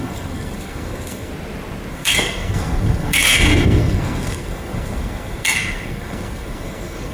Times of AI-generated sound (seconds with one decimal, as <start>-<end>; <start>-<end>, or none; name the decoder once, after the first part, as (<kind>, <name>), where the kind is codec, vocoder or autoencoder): 0.0-1.3 (codec, SNAC); 1.9-7.1